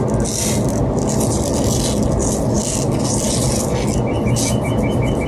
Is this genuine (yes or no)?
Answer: yes